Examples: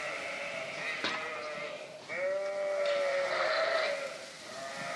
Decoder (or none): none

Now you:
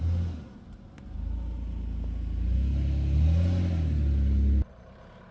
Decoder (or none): none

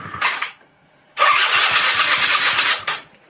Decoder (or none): vocoder, Vocos